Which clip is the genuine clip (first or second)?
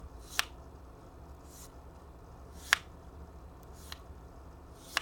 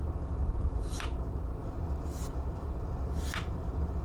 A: first